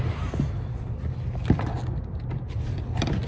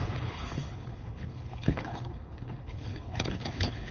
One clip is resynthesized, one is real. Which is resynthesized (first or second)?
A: second